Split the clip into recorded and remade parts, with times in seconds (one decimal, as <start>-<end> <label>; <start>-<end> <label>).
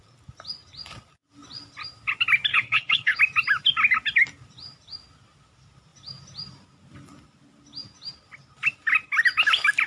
0.0-2.5 recorded; 2.5-3.2 remade; 3.2-9.9 recorded